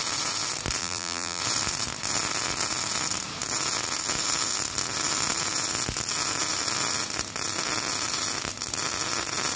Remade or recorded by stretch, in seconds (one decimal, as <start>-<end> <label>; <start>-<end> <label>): 0.0-0.8 recorded; 0.8-1.4 remade; 1.4-9.6 recorded